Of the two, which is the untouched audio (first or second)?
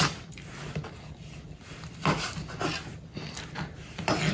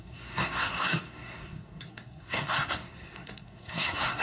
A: first